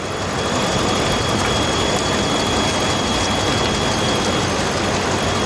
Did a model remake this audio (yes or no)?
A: no